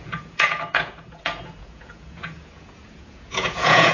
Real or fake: fake